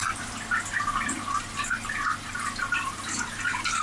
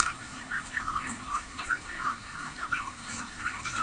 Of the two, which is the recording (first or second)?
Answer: first